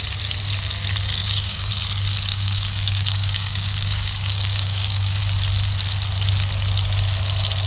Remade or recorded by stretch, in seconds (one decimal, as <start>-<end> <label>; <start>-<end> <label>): 0.0-1.2 recorded; 1.2-1.7 remade; 1.7-2.3 recorded; 2.3-5.2 remade; 5.2-7.7 recorded

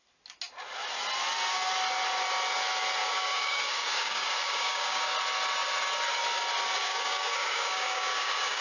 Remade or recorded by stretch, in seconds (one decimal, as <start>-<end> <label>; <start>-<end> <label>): 0.0-3.0 recorded; 3.0-5.1 remade; 5.1-6.8 recorded; 6.8-8.6 remade

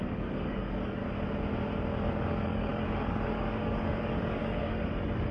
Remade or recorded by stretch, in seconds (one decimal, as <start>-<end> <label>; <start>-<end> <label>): 0.0-1.0 remade; 1.0-2.1 recorded; 2.1-5.3 remade

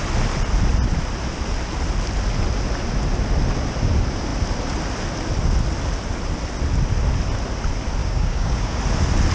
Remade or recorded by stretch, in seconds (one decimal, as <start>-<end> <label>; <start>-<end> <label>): 0.0-8.0 recorded; 8.0-8.8 remade; 8.8-9.3 recorded

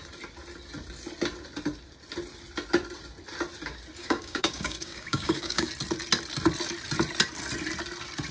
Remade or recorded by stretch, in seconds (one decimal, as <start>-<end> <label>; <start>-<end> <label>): 0.0-4.0 recorded; 4.0-5.7 remade; 5.7-8.3 recorded

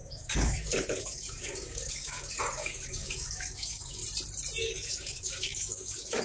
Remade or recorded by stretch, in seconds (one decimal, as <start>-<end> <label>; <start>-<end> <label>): 0.0-4.0 remade; 4.0-4.6 recorded; 4.6-6.2 remade

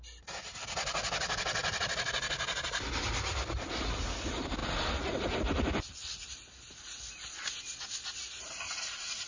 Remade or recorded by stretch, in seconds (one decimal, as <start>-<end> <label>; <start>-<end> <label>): 0.0-9.3 recorded

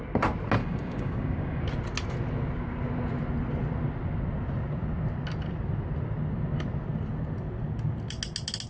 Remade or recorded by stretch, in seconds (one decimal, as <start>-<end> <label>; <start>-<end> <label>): 0.0-0.6 recorded; 0.6-1.6 remade; 1.6-8.7 recorded